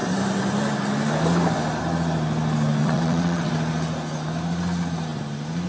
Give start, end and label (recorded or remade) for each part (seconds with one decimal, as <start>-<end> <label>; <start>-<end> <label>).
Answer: 0.0-2.8 recorded; 2.8-3.5 remade; 3.5-5.7 recorded